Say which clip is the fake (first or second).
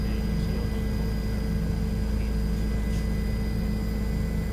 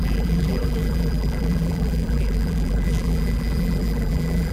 second